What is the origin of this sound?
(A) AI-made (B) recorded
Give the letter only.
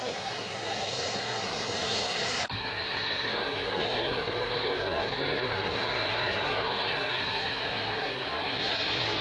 A